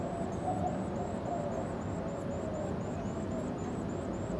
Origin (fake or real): real